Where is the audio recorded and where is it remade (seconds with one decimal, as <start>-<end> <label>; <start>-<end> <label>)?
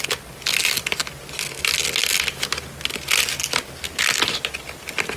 0.0-5.2 recorded